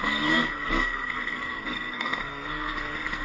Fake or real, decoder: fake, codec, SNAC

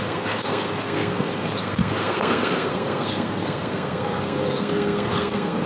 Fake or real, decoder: fake, codec, SNAC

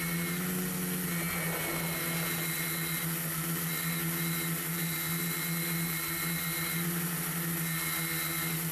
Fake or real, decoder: real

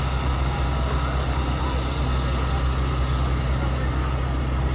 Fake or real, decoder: real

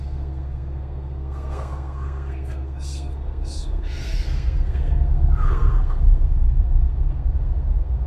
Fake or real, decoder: fake, codec, SNAC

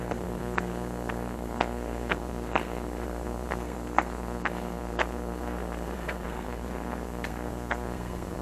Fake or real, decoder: fake, codec, SNAC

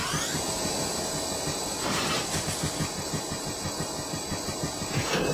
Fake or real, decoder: real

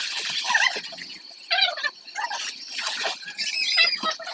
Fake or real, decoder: real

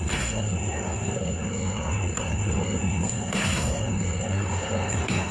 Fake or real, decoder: fake, codec, SNAC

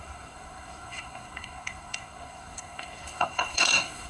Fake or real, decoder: fake, codec, SNAC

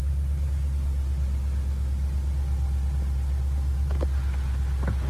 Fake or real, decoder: real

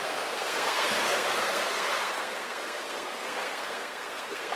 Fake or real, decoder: fake, codec, SNAC